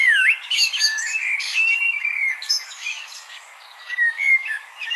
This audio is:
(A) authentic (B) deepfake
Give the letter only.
B